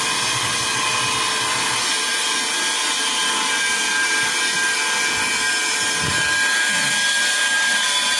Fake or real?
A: real